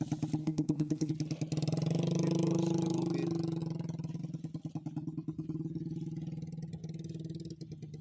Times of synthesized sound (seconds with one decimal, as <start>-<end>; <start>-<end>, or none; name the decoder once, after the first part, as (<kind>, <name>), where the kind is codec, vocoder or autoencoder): 0.4-1.1 (codec, SNAC)